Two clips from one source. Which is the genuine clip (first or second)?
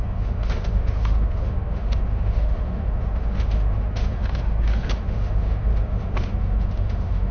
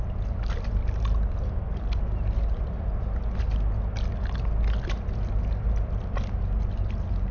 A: second